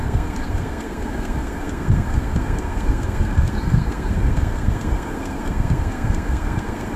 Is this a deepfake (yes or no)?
yes